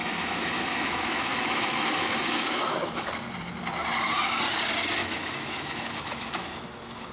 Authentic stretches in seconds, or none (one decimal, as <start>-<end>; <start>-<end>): 3.1-5.0